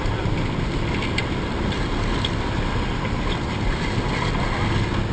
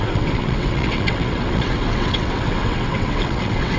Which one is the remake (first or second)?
second